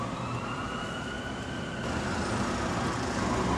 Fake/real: fake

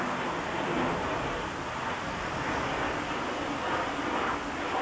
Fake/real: real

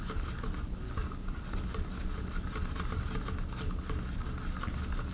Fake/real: real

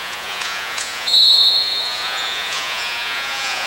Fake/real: fake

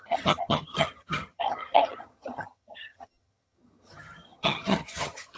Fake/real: fake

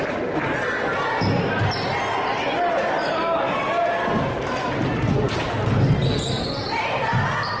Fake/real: real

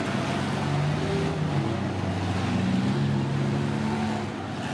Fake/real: real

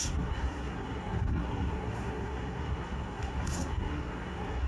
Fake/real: fake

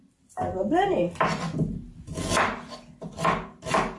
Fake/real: fake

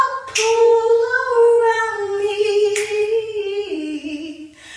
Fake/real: fake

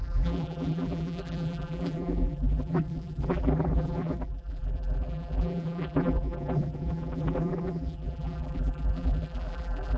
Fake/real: fake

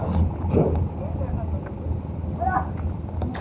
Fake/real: real